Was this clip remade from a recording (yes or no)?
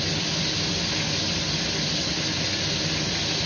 no